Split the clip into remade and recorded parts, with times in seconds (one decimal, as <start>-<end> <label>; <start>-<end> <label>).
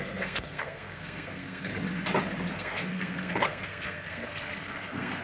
0.0-1.7 remade; 1.7-2.5 recorded; 2.5-5.2 remade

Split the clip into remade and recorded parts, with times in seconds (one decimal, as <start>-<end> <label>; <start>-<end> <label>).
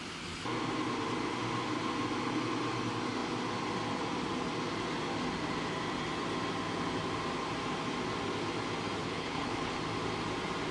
0.0-9.0 recorded; 9.0-9.8 remade; 9.8-10.7 recorded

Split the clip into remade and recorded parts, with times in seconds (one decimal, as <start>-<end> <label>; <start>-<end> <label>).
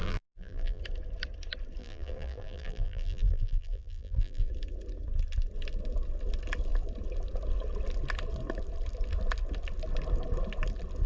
0.0-0.8 remade; 0.8-1.8 recorded; 1.8-4.5 remade; 4.5-11.1 recorded